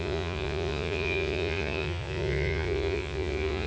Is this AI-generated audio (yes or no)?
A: yes